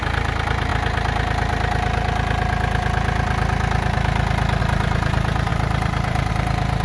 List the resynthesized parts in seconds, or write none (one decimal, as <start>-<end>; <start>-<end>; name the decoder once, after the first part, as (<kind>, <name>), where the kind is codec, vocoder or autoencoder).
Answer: 0.0-0.7 (vocoder, BigVGAN v2); 4.6-6.8